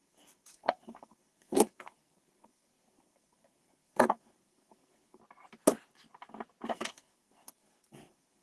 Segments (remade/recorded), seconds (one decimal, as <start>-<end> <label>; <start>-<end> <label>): 0.0-5.2 remade; 5.2-6.7 recorded; 6.7-8.4 remade